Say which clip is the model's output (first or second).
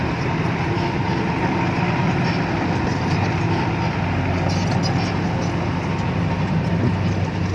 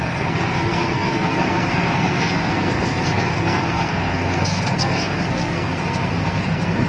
second